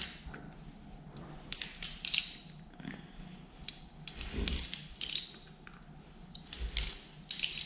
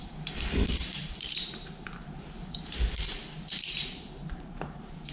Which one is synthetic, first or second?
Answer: second